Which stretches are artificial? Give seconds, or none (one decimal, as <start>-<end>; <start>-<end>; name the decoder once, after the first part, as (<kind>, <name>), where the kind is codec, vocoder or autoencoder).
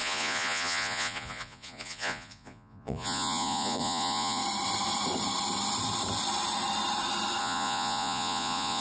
0.0-4.4 (vocoder, Vocos); 7.4-8.8